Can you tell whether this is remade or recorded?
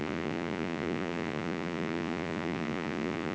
remade